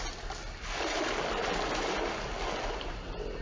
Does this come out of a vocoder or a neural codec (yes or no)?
no